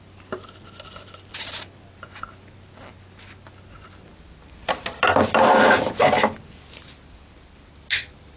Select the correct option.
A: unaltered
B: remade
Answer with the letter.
A